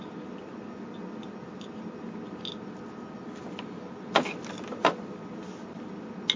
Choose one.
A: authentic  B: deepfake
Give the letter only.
A